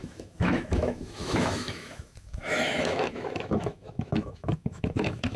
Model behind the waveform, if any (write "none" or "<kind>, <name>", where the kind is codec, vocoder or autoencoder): autoencoder, DAC-VAE